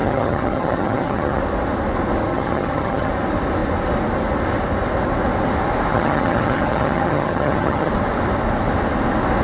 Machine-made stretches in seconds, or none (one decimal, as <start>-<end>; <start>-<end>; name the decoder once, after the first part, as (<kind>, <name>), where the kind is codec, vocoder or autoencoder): 0.0-1.4 (vocoder, HiFi-GAN); 2.3-3.1; 5.9-7.9